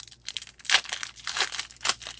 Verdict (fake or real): real